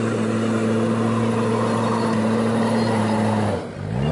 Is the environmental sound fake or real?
real